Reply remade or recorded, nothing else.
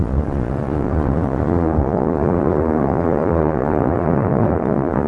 remade